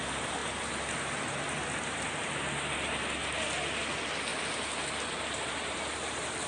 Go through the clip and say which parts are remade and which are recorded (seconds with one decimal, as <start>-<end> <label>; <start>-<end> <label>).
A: 0.0-6.5 recorded